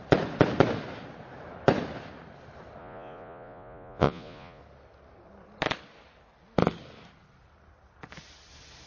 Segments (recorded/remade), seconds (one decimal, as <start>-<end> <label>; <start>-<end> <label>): 0.0-2.8 recorded; 2.8-4.6 remade; 4.6-8.9 recorded